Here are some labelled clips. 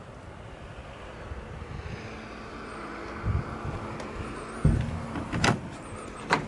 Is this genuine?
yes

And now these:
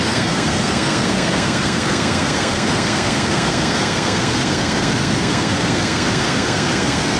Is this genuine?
no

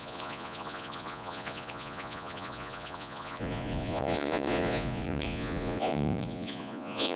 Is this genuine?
no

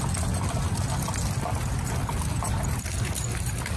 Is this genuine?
yes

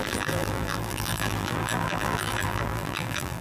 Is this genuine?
no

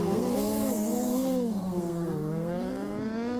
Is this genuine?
no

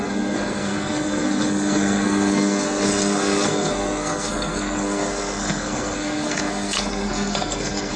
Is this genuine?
no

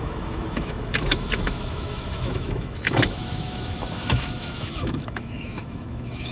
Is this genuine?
no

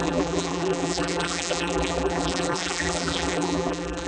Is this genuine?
no